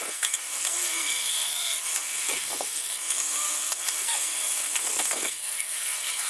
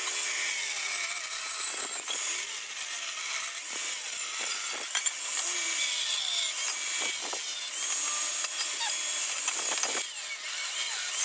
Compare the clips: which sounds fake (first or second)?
first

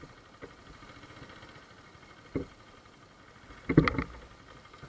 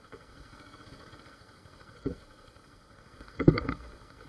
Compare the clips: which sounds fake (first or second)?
second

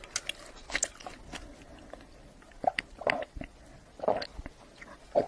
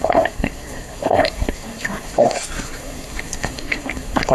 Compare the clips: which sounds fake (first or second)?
second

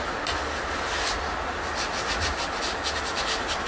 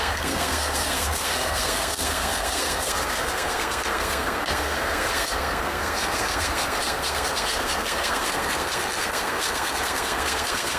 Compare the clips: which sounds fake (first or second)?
second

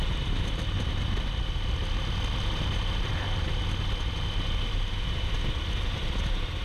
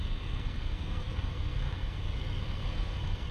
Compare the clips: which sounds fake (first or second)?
second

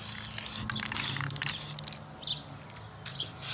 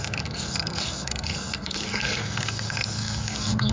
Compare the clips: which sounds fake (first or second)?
second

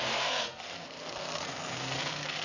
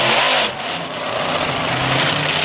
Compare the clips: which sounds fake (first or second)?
first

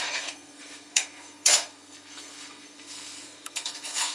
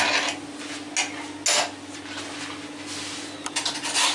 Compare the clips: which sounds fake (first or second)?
first